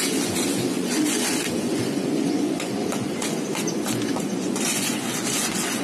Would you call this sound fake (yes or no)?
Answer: yes